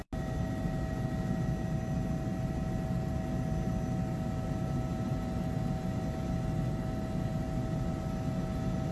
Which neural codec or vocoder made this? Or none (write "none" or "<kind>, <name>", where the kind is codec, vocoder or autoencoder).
none